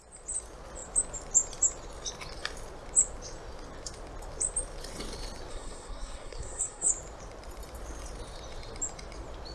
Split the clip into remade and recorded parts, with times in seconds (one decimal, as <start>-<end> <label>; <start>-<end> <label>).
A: 0.0-5.5 recorded; 5.5-6.9 remade; 6.9-9.5 recorded